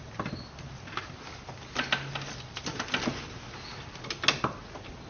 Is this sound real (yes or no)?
yes